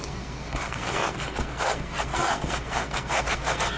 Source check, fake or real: fake